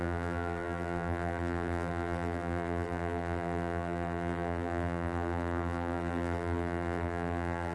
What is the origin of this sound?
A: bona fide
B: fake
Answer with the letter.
B